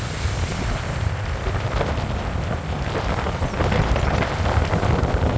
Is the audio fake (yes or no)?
no